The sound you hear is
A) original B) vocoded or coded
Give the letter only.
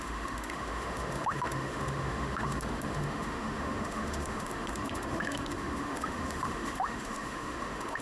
B